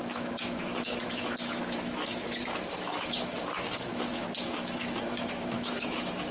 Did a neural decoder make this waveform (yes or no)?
yes